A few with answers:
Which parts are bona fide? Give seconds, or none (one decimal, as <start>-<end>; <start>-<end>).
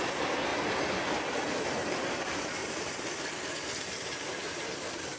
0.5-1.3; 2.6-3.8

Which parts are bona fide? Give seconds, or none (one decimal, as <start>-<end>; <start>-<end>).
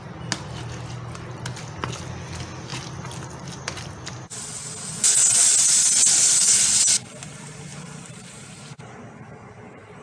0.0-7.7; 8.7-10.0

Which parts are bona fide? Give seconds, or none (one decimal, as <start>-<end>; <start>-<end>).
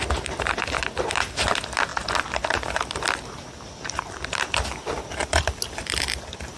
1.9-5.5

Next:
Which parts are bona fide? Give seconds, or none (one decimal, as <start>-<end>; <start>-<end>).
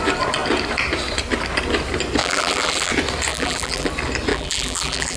0.0-2.2; 2.9-3.3; 3.9-4.3